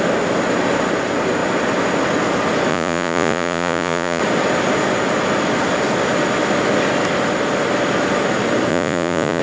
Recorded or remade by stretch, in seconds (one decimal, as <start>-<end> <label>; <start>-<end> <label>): 0.0-2.7 recorded; 2.7-4.2 remade; 4.2-8.7 recorded; 8.7-9.4 remade